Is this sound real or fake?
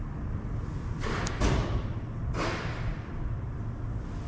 fake